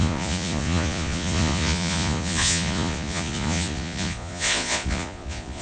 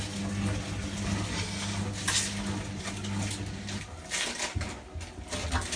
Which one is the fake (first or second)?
first